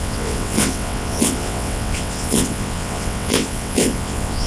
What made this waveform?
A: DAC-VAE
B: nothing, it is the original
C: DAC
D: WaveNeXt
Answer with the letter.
D